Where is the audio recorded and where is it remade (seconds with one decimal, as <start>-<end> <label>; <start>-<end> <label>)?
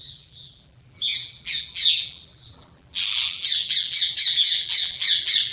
0.0-5.5 remade